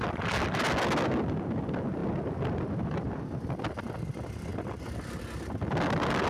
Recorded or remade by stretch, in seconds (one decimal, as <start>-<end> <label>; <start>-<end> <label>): 0.0-6.3 recorded